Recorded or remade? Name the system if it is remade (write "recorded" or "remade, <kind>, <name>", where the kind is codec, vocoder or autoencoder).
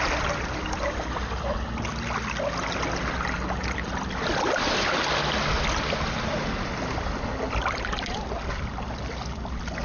recorded